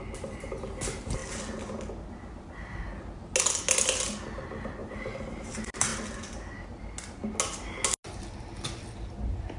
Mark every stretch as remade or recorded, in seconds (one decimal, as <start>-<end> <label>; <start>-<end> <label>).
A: 0.0-4.8 recorded; 4.8-5.5 remade; 5.5-9.6 recorded